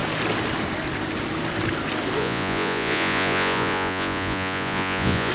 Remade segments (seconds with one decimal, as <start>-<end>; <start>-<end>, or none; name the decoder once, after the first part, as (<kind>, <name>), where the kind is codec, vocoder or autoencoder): 2.2-5.3 (vocoder, Vocos)